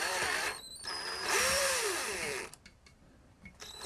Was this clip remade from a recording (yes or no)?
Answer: yes